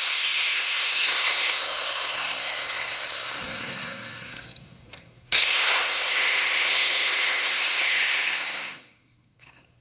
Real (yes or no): no